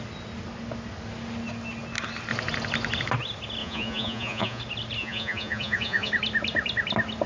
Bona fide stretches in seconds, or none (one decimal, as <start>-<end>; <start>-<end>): 0.0-3.6; 4.6-5.0; 6.1-7.3